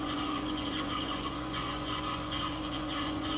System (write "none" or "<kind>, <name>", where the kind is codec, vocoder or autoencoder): vocoder, Vocos